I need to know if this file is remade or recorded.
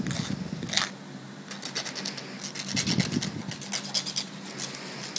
recorded